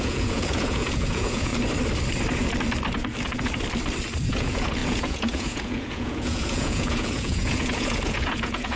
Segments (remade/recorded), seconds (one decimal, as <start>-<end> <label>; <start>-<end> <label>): 0.0-1.5 remade; 1.5-4.3 recorded; 4.3-8.8 remade